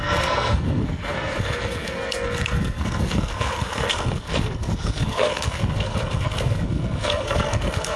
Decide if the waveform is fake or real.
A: fake